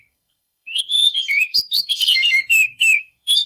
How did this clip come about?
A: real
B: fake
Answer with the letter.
B